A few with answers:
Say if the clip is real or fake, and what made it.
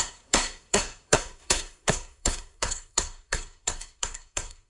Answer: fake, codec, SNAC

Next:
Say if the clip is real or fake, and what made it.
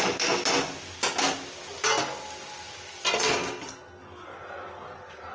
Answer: real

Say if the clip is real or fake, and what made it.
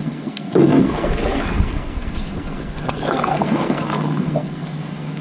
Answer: fake, codec, SNAC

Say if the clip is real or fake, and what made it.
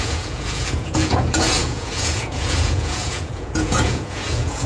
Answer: fake, vocoder, Vocos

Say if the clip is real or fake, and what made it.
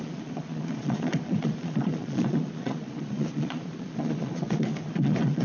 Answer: fake, vocoder, Vocos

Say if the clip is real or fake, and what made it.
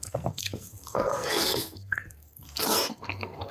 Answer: fake, codec, SNAC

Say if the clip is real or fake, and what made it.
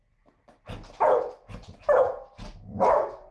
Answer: real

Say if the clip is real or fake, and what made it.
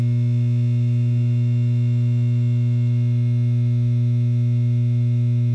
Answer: fake, autoencoder, DAC-VAE